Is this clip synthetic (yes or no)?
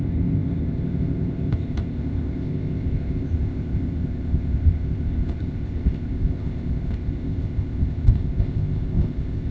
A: yes